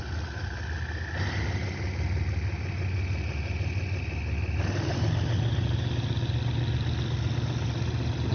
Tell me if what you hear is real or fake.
real